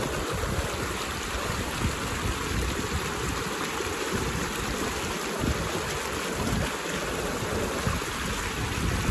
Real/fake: real